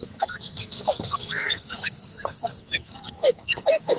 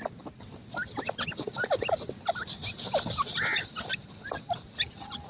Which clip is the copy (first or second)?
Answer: first